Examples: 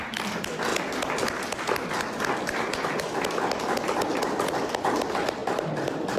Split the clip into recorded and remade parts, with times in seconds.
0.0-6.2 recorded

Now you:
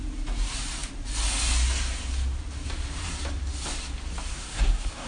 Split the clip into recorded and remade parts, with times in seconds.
0.0-4.3 recorded; 4.3-5.1 remade

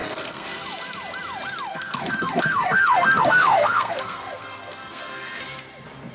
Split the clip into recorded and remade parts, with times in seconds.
0.0-0.6 remade; 0.6-1.7 recorded; 1.7-5.4 remade; 5.4-6.1 recorded

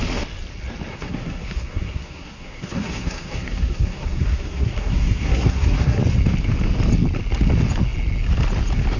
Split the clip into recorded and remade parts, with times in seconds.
0.0-0.9 recorded; 0.9-6.0 remade; 6.0-9.0 recorded

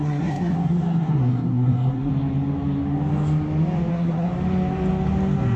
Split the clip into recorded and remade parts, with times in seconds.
0.0-2.1 remade; 2.1-3.9 recorded; 3.9-4.3 remade; 4.3-5.6 recorded

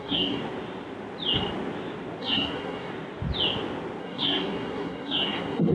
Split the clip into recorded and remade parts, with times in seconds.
0.0-0.4 remade; 0.4-2.2 recorded; 2.2-2.9 remade; 2.9-4.0 recorded; 4.0-5.7 remade